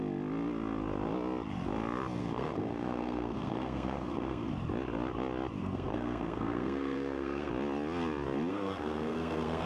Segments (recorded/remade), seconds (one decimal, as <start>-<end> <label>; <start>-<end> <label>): 0.0-2.2 recorded; 2.2-4.5 remade; 4.5-5.6 recorded; 5.6-7.5 remade; 7.5-8.5 recorded; 8.5-9.7 remade